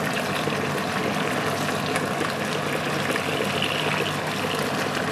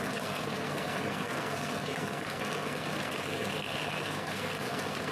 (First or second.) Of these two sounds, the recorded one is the first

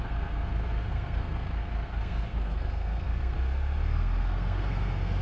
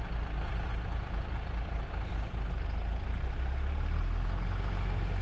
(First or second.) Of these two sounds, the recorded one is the second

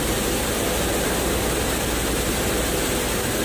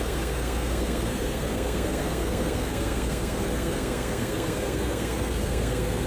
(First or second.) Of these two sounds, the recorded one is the first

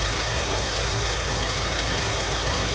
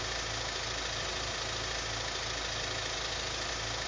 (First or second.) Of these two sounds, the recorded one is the second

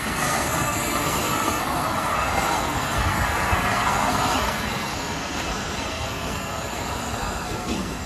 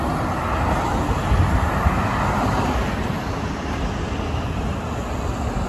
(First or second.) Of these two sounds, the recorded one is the second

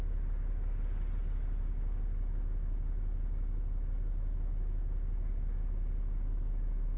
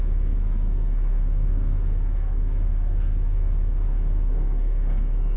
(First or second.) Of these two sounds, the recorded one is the first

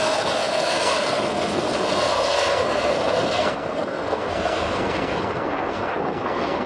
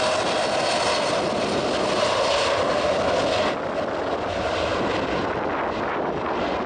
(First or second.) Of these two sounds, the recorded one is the second